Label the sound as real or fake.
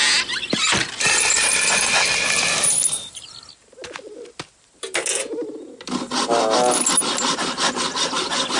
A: real